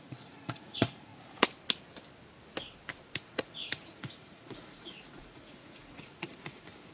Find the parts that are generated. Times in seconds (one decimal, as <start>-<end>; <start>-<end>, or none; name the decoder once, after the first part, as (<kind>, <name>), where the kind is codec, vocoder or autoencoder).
0.0-1.1 (vocoder, Vocos); 3.2-6.9